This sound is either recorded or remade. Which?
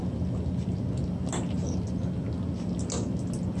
recorded